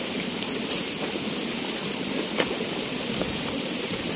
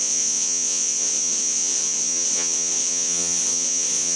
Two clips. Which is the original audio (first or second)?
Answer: first